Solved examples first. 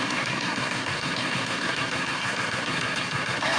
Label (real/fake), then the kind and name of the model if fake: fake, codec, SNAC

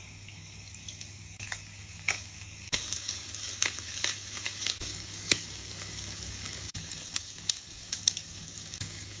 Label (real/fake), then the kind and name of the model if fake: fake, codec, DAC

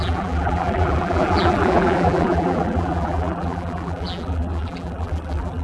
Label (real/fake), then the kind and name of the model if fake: fake, vocoder, BigVGAN v2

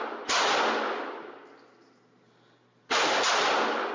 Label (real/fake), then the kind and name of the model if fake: real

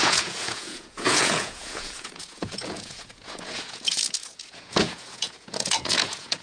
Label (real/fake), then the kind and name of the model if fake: fake, vocoder, Vocos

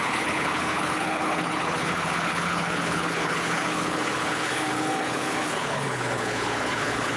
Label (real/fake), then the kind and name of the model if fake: fake, codec, HILCodec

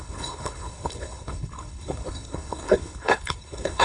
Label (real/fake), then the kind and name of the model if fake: fake, codec, HILCodec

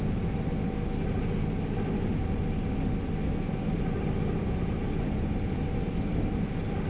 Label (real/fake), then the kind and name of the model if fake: real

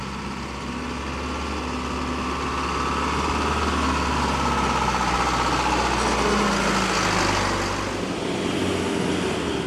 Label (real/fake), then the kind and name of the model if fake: real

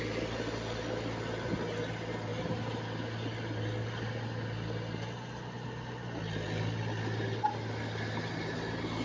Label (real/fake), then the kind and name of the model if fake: real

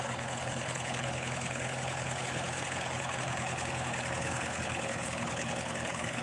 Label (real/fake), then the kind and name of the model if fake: fake, codec, HILCodec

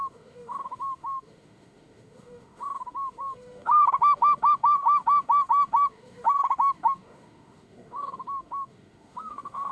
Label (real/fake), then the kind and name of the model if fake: fake, autoencoder, DAC-VAE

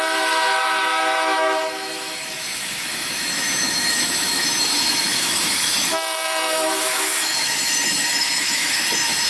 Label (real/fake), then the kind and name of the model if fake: fake, autoencoder, DAC-VAE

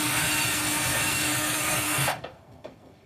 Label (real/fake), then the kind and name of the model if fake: fake, codec, SNAC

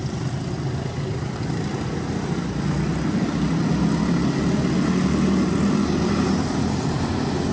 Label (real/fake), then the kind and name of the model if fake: real